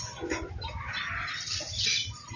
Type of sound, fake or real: real